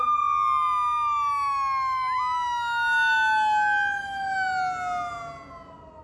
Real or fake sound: real